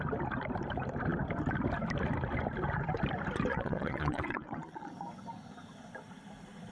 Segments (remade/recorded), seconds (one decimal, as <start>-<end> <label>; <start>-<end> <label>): 0.0-3.5 recorded; 3.5-4.9 remade; 4.9-6.7 recorded

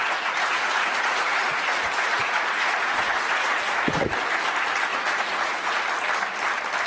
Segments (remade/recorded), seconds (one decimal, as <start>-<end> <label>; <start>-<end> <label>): 0.0-4.1 remade; 4.1-4.9 recorded; 4.9-5.8 remade; 5.8-6.9 recorded

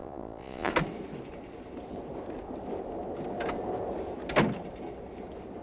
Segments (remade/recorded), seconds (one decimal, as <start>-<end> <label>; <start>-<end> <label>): 0.0-0.7 remade; 0.7-5.6 recorded

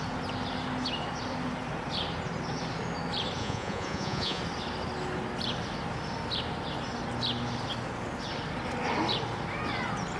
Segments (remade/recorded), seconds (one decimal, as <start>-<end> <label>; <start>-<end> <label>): 0.0-3.4 recorded; 3.4-4.4 remade; 4.4-10.2 recorded

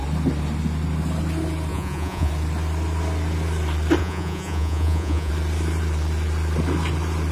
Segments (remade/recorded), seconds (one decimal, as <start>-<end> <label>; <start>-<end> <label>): 0.0-1.7 recorded; 1.7-2.3 remade; 2.3-4.0 recorded; 4.0-5.3 remade; 5.3-7.3 recorded

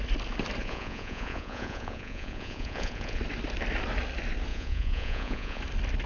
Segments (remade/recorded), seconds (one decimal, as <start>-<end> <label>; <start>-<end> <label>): 0.0-0.6 recorded; 0.6-3.2 remade; 3.2-4.5 recorded; 4.5-5.6 remade; 5.6-6.1 recorded